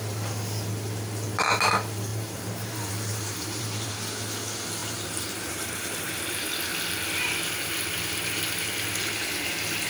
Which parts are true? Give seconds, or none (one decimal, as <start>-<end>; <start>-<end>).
0.0-2.1; 3.9-4.8; 6.1-9.9